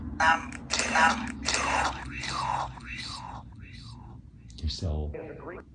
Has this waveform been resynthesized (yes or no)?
no